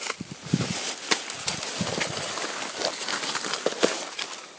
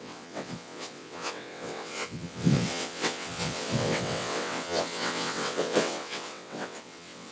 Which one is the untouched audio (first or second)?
first